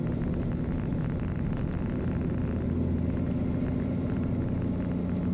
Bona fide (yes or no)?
yes